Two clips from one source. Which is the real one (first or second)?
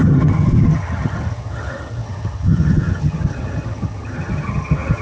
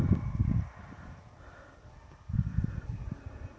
second